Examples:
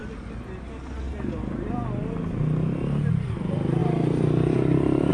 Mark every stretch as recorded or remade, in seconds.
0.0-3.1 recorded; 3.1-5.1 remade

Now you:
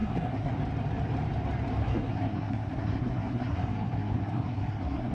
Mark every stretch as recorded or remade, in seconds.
0.0-0.5 remade; 0.5-1.8 recorded; 1.8-5.1 remade

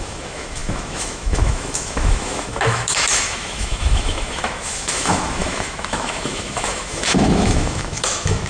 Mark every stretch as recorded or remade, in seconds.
0.0-8.5 remade